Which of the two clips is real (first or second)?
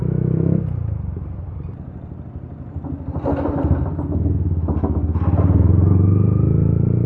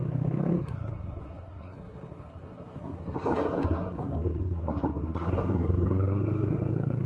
first